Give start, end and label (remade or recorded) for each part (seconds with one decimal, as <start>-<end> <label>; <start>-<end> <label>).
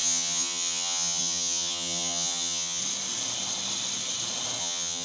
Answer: 0.0-2.8 remade; 2.8-4.6 recorded; 4.6-5.0 remade